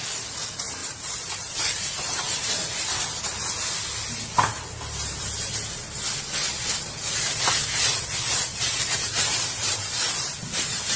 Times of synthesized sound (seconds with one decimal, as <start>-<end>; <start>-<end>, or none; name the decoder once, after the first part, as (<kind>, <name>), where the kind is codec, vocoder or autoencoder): 0.8-3.2 (vocoder, BigVGAN v2); 4.5-5.5; 8.5-11.0